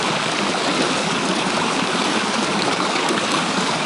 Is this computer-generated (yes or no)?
yes